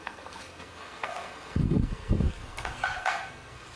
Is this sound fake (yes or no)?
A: yes